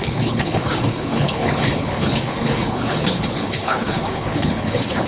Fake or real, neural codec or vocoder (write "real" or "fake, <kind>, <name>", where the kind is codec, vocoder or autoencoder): fake, codec, HILCodec